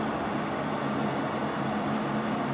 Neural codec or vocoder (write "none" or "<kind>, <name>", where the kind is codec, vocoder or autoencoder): none